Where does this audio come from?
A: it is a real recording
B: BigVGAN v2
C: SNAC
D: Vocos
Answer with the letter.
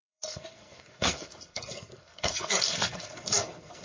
C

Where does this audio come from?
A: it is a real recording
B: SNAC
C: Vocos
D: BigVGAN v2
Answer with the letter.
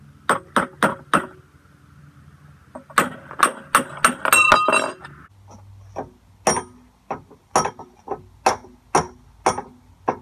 A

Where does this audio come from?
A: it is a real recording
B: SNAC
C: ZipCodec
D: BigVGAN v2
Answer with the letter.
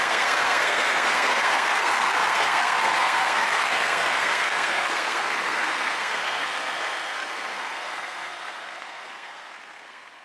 B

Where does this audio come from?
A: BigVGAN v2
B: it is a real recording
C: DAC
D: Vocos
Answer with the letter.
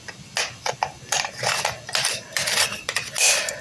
B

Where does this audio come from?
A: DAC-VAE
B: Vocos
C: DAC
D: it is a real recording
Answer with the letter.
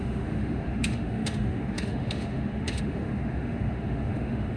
A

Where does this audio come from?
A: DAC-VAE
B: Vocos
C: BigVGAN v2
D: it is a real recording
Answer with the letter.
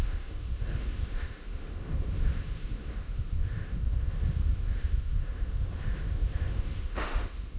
A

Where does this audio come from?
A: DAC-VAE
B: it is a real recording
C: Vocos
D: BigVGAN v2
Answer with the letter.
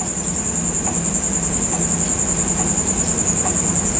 B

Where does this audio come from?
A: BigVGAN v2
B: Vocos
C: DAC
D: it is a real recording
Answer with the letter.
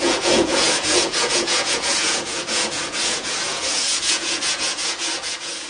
B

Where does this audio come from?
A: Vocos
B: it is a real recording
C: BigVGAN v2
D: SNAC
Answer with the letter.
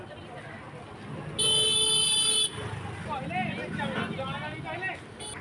B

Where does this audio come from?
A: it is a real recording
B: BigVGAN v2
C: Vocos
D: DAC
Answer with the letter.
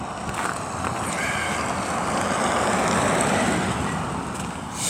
A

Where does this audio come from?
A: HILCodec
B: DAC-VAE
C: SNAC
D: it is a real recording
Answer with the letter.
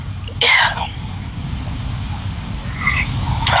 D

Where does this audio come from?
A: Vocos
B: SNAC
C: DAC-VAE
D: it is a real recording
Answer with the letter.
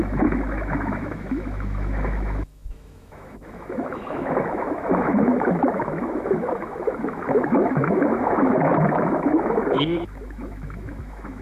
C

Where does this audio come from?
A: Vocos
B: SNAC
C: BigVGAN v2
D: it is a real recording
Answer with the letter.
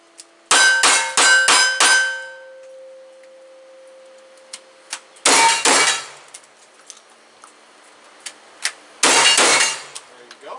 D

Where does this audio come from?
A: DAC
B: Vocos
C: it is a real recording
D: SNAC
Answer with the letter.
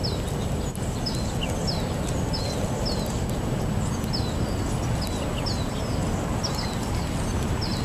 C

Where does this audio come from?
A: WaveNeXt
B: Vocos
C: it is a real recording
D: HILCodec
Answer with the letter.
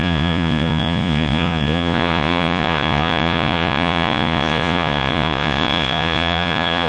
B